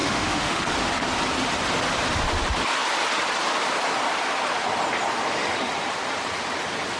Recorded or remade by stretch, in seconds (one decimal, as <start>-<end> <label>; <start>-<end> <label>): 0.0-0.6 remade; 0.6-7.0 recorded